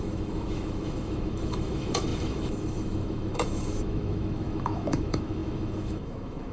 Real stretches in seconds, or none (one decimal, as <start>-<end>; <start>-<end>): none